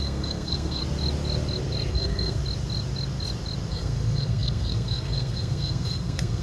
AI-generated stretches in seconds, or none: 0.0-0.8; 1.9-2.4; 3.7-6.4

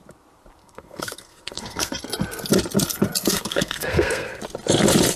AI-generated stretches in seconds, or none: 0.6-1.9; 3.2-4.4

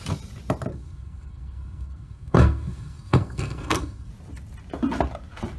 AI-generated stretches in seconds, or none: 0.7-4.1

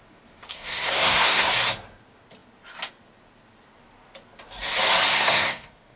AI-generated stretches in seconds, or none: 0.5-1.5; 5.1-6.0